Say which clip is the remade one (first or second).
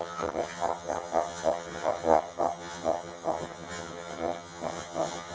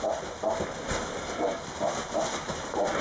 first